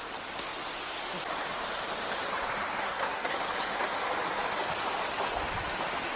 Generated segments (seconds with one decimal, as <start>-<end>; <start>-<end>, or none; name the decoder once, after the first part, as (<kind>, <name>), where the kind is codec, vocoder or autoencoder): 2.8-3.4 (codec, SNAC)